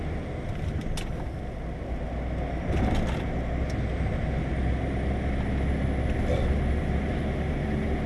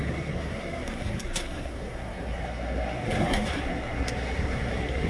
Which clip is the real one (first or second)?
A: first